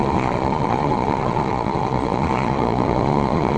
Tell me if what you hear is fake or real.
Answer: fake